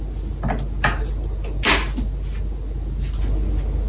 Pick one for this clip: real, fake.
real